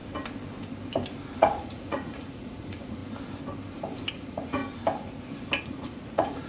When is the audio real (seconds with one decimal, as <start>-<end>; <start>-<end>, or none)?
0.0-1.4; 3.0-4.1; 4.6-5.6